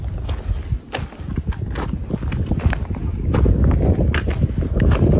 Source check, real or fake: real